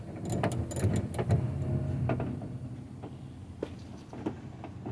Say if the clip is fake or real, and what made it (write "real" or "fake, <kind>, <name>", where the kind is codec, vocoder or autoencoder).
real